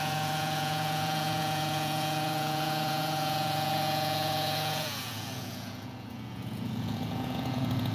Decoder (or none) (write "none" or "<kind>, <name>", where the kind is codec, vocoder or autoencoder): vocoder, Vocos